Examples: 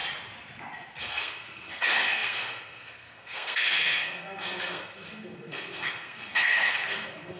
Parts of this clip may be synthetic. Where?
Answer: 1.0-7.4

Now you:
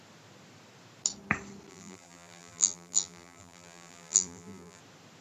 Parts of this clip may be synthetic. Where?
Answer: 1.7-4.8

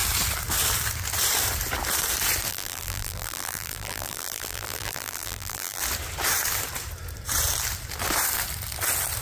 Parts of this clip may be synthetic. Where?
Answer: 2.5-5.8

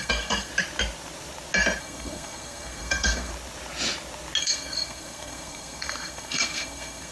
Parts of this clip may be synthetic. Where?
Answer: 0.0-0.5; 1.8-3.3; 4.4-7.1

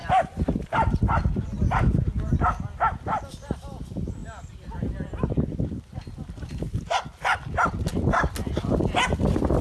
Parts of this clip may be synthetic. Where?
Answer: 0.0-1.1

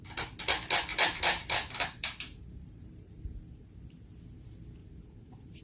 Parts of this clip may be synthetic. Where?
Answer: 0.9-3.5; 4.8-5.6

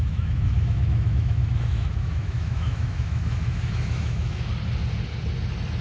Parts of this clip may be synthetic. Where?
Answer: 0.0-4.5